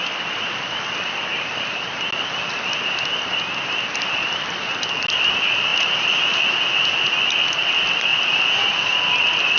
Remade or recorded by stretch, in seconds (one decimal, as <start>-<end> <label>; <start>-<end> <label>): 0.0-1.3 recorded; 1.3-1.8 remade; 1.8-5.7 recorded; 5.7-6.4 remade; 6.4-8.1 recorded; 8.1-9.0 remade; 9.0-9.6 recorded